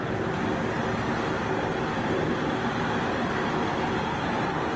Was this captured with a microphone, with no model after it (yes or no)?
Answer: yes